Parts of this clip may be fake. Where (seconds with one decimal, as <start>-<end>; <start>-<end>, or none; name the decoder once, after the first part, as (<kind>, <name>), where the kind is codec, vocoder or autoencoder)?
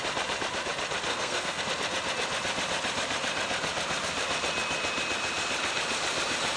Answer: 1.1-1.6 (codec, SNAC)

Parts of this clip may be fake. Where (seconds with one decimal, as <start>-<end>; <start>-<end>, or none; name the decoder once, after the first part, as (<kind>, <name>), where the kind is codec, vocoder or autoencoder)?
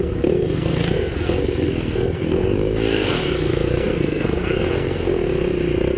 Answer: 0.0-5.2 (codec, SNAC)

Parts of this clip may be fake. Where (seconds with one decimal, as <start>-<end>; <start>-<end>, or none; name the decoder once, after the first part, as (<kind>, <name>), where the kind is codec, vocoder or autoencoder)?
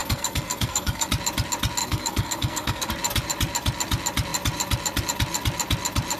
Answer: 0.0-1.1 (codec, SNAC); 1.8-2.9